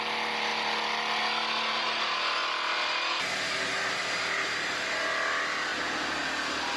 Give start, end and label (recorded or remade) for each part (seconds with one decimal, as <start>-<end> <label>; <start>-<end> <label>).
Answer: 0.0-6.8 recorded